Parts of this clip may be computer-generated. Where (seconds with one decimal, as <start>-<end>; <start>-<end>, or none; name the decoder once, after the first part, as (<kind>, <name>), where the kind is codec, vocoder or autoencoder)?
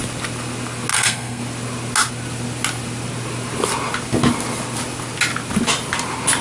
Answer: 0.9-1.4 (codec, SNAC)